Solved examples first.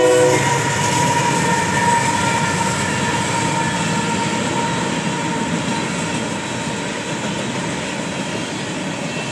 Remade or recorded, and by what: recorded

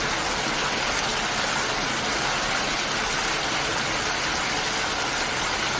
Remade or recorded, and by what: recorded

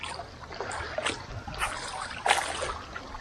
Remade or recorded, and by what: recorded